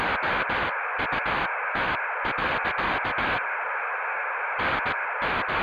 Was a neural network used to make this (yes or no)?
no